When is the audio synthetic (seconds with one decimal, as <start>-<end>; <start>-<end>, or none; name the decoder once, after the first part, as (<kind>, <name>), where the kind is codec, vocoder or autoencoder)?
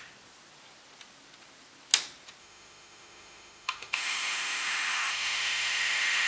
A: 2.4-6.3 (autoencoder, DAC-VAE)